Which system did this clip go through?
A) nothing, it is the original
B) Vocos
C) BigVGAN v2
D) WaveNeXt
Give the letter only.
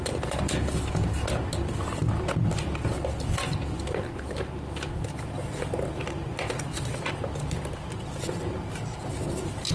A